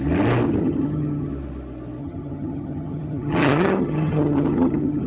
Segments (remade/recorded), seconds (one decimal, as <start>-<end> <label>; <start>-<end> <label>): 0.0-0.6 recorded; 0.6-1.3 remade; 1.3-2.0 recorded; 2.0-5.1 remade